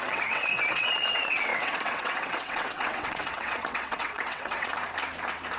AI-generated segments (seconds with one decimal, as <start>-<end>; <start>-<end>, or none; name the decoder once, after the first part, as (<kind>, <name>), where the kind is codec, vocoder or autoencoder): 0.0-4.7 (vocoder, WaveNeXt)